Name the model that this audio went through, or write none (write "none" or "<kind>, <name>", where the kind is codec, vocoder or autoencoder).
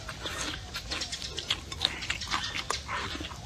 none